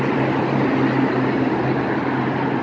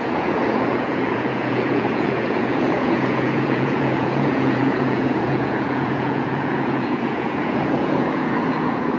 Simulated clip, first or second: second